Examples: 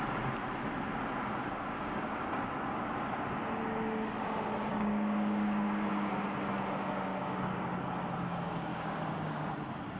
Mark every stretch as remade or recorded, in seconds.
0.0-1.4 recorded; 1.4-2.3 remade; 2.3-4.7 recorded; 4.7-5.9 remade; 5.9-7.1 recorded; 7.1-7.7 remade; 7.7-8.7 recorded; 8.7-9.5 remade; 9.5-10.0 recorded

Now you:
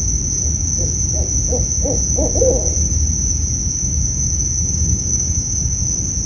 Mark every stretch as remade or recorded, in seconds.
0.0-3.6 recorded; 3.6-5.8 remade; 5.8-6.3 recorded

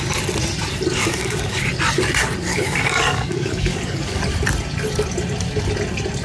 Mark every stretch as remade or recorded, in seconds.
0.0-1.0 recorded; 1.0-1.6 remade; 1.6-2.5 recorded; 2.5-4.2 remade; 4.2-6.2 recorded

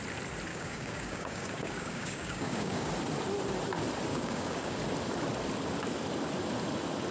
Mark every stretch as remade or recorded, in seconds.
0.0-0.5 recorded; 0.5-2.9 remade; 2.9-4.1 recorded; 4.1-4.8 remade; 4.8-7.1 recorded

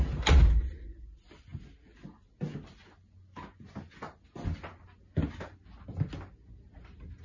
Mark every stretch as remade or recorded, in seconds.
0.0-7.2 recorded

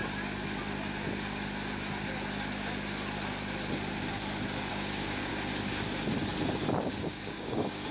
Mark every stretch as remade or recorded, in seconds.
0.0-4.7 recorded; 4.7-5.3 remade; 5.3-6.8 recorded; 6.8-7.9 remade

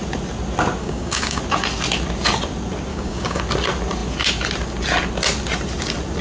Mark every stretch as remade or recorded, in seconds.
0.0-0.8 recorded; 0.8-1.4 remade; 1.4-2.9 recorded; 2.9-3.4 remade; 3.4-6.2 recorded